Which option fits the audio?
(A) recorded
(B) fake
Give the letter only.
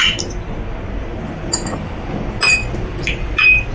A